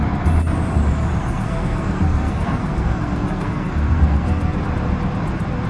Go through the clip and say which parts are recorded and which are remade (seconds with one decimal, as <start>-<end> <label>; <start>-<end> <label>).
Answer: 0.0-1.2 recorded; 1.2-4.6 remade; 4.6-5.7 recorded